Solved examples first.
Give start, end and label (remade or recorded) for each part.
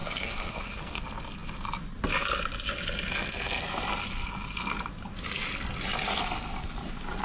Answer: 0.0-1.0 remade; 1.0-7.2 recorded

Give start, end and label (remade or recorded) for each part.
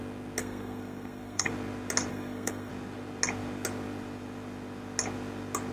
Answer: 0.0-0.4 recorded; 0.4-1.5 remade; 1.5-2.1 recorded; 2.1-2.7 remade; 2.7-5.7 recorded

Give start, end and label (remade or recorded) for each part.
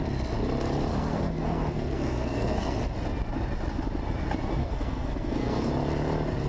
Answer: 0.0-0.9 recorded; 0.9-2.8 remade; 2.8-4.6 recorded; 4.6-5.7 remade; 5.7-6.5 recorded